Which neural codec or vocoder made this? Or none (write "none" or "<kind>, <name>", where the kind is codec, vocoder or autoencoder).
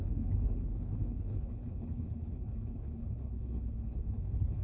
codec, HILCodec